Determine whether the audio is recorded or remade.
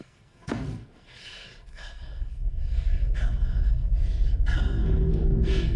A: remade